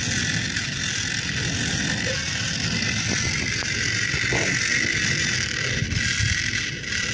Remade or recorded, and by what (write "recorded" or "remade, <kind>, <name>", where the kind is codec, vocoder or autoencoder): recorded